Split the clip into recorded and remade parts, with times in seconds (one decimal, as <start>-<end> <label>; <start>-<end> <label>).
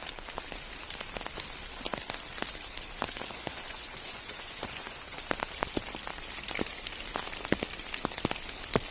0.0-3.2 recorded; 3.2-5.2 remade; 5.2-8.9 recorded